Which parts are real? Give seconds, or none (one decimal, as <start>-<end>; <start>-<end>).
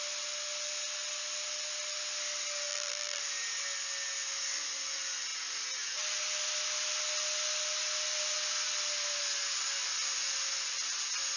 0.0-2.7; 3.2-11.4